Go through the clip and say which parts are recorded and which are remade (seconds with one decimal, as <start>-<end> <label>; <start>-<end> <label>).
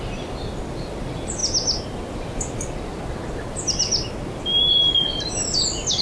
0.0-6.0 recorded